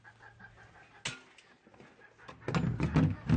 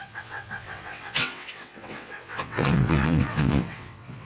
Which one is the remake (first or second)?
second